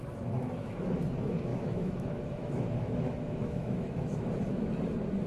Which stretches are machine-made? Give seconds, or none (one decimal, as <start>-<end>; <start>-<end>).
0.4-1.0; 1.5-4.7